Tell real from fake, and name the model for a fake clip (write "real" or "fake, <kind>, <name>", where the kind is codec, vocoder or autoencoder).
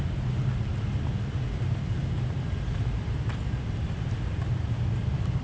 real